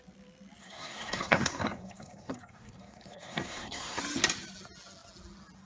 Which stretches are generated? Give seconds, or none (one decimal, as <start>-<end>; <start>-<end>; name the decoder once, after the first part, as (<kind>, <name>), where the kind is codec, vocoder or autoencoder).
0.6-4.0 (codec, SNAC)